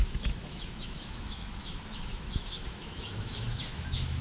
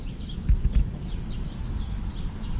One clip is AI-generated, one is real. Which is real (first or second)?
second